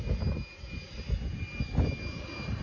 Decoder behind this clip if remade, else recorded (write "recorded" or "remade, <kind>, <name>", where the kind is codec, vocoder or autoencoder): recorded